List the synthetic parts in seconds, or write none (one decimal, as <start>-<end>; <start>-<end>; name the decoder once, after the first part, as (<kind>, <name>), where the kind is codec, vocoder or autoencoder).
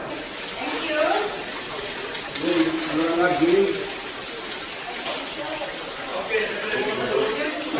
none